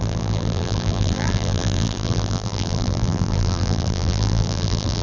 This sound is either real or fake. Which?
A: fake